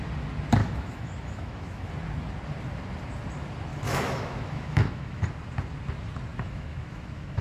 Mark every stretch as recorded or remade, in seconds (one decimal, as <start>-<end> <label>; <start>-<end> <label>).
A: 0.0-0.6 recorded; 0.6-1.9 remade; 1.9-3.7 recorded; 3.7-5.2 remade; 5.2-6.3 recorded; 6.3-7.4 remade